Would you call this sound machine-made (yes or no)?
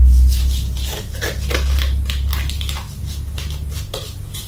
no